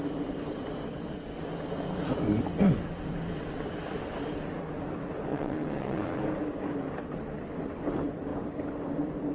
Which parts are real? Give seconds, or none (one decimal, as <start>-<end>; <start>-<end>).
0.0-5.3; 6.2-9.3